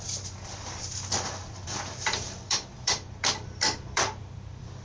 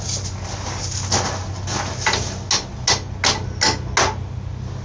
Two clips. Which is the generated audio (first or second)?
first